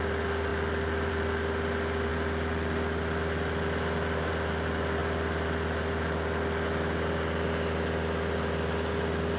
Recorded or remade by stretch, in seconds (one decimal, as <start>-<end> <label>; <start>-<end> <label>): 0.0-9.4 recorded